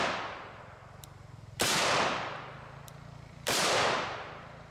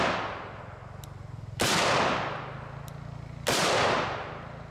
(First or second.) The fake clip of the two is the first